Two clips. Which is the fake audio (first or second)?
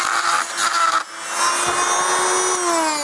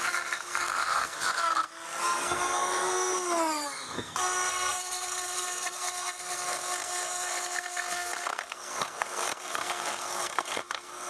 second